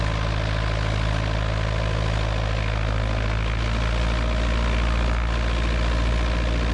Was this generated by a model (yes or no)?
no